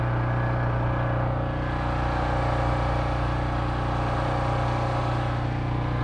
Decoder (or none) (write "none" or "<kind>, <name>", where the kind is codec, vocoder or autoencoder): none